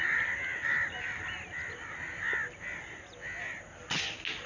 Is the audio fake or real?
real